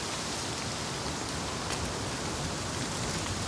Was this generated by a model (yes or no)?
no